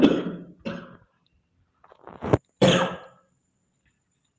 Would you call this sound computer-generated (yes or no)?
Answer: no